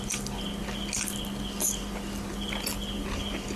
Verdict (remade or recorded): recorded